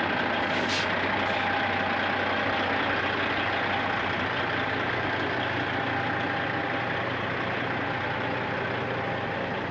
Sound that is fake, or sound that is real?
real